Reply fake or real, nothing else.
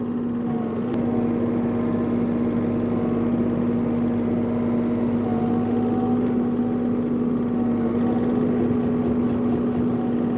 real